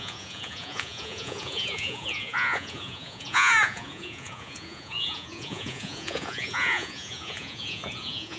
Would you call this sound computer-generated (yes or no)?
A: yes